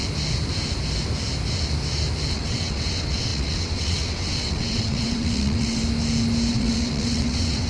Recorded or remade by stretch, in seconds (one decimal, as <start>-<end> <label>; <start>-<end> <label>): 0.0-2.3 recorded; 2.3-5.8 remade; 5.8-6.5 recorded; 6.5-7.7 remade